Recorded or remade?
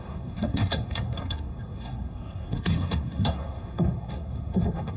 remade